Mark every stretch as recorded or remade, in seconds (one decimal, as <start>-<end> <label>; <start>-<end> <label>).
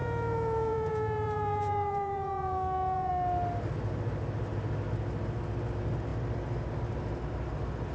0.0-3.1 remade; 3.1-7.9 recorded